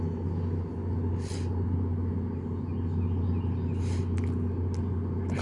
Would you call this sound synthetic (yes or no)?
no